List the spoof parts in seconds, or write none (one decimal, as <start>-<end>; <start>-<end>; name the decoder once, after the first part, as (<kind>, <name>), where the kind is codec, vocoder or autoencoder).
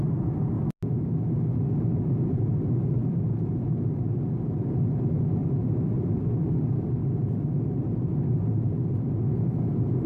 3.0-3.6 (vocoder, BigVGAN v2); 5.4-6.2; 7.0-10.1